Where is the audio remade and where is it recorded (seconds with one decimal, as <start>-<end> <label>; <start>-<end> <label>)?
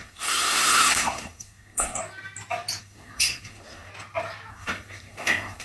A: 0.0-2.0 remade; 2.0-2.8 recorded; 2.8-3.9 remade; 3.9-4.5 recorded; 4.5-5.6 remade